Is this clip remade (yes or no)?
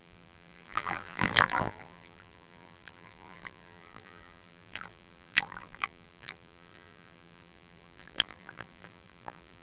yes